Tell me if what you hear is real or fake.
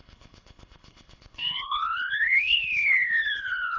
fake